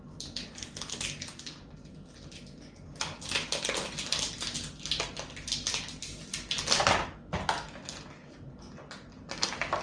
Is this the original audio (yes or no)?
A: yes